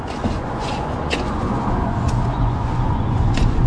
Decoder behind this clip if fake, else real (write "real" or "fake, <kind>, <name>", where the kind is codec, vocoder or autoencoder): fake, vocoder, Vocos